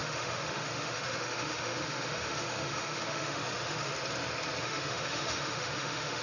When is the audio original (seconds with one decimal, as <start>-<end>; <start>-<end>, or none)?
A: 3.9-4.6